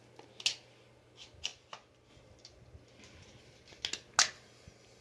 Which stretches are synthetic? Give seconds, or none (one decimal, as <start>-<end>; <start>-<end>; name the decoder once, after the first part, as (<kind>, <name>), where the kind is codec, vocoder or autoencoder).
none